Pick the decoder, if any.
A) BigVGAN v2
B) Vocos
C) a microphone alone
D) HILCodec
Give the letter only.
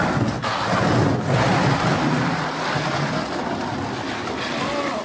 C